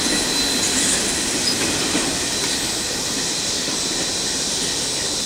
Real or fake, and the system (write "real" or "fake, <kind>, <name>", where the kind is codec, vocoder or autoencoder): real